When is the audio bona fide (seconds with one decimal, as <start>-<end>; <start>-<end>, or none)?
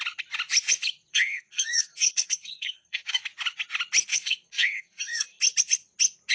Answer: 0.0-1.1; 3.2-4.1; 5.4-6.3